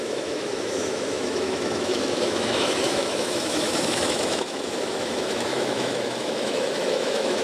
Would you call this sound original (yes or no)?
no